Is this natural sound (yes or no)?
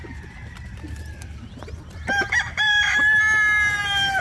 yes